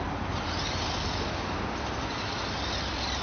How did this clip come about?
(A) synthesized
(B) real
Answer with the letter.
B